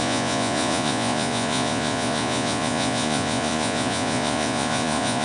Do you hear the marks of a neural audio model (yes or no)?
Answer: yes